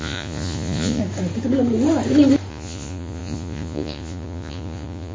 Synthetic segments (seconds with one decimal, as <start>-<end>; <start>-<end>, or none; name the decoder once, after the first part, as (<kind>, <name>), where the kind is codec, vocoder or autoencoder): 0.0-1.0 (vocoder, Vocos); 2.5-5.1